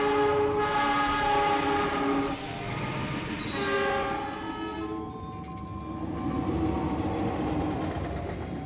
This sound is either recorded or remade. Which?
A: recorded